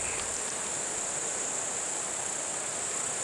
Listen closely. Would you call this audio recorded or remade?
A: recorded